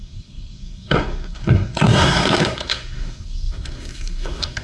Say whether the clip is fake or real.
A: fake